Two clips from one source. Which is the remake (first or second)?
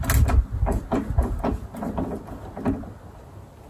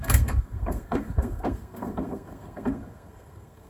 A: second